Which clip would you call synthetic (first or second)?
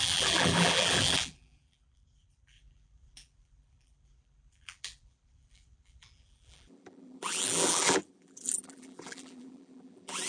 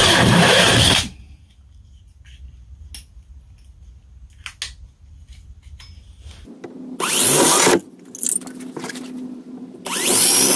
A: first